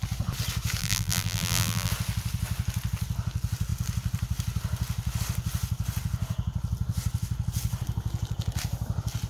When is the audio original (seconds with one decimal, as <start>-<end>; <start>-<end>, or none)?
0.0-0.8; 1.9-9.3